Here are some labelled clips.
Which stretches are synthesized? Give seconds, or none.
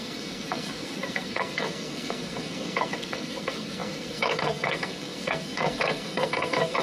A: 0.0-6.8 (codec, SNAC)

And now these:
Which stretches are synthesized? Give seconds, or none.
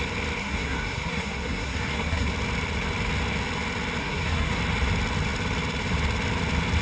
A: 0.4-2.3 (codec, SNAC); 4.0-4.6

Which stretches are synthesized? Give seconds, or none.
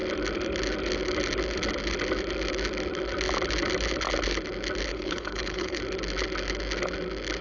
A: 4.9-5.8 (codec, HILCodec)